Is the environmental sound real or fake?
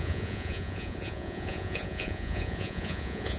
fake